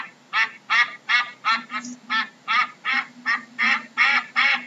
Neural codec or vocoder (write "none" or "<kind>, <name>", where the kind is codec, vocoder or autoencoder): none